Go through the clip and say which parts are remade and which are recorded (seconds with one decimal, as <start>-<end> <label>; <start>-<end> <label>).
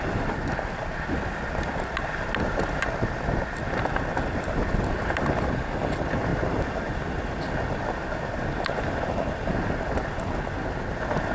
0.0-11.3 recorded